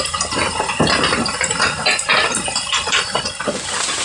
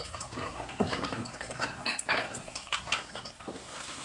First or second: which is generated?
second